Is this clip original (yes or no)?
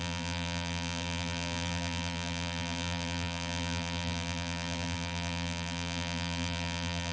no